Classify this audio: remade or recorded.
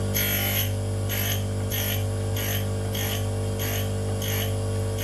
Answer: recorded